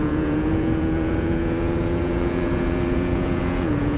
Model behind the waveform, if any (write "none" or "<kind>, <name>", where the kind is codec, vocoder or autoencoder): vocoder, Vocos